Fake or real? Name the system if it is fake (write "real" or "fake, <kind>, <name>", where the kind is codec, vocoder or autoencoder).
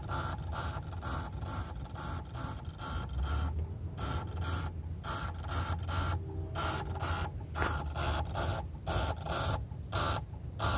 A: real